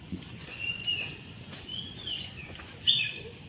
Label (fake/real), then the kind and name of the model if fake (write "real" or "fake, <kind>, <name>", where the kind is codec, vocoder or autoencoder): fake, vocoder, Vocos